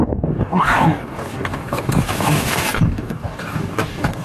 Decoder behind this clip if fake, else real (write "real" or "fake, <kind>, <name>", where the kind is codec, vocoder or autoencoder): fake, codec, DAC